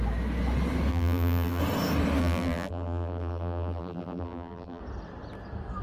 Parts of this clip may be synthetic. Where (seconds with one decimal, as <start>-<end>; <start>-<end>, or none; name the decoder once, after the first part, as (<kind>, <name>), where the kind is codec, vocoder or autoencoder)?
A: 0.9-1.6 (vocoder, BigVGAN v2); 2.2-4.8